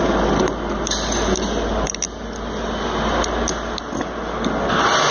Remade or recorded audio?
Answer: recorded